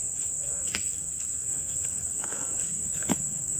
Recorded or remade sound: remade